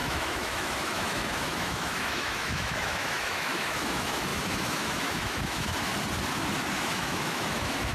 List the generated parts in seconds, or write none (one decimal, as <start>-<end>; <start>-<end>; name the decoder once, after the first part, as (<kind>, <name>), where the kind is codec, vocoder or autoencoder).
0.0-5.9 (autoencoder, DAC-VAE); 6.7-7.9